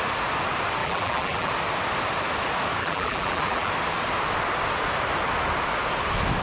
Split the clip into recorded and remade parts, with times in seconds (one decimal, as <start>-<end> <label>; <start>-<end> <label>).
0.0-0.8 recorded; 0.8-1.5 remade; 1.5-2.8 recorded; 2.8-3.7 remade; 3.7-6.4 recorded